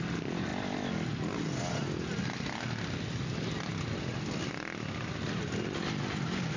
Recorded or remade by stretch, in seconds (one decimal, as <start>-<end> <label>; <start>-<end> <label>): 0.0-6.6 recorded